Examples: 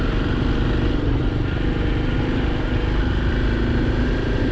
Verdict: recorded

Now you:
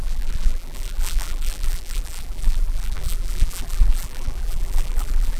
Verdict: remade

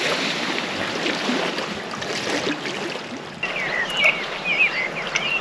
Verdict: recorded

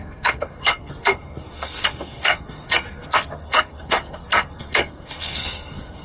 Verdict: remade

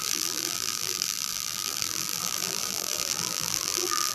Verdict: remade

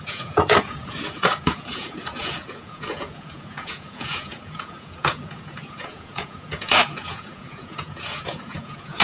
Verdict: remade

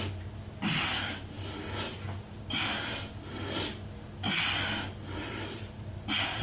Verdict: recorded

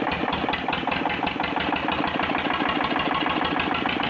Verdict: recorded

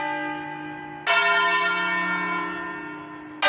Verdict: recorded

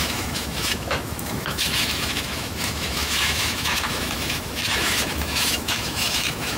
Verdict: remade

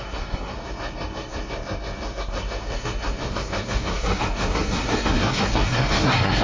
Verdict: remade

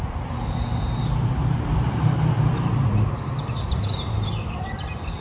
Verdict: remade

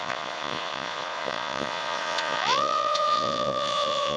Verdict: remade